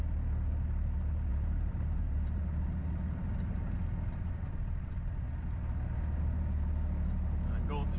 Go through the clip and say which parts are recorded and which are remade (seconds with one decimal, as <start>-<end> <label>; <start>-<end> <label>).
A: 0.0-1.3 recorded; 1.3-2.4 remade; 2.4-8.0 recorded